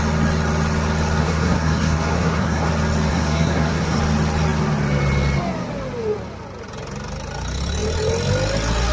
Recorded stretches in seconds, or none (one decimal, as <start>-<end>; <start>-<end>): 0.0-1.2; 2.7-3.1; 4.0-8.9